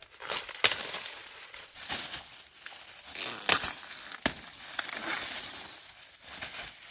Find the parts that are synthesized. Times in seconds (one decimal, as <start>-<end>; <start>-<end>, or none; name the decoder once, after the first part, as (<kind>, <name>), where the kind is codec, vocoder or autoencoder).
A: 1.2-1.8 (vocoder, Vocos)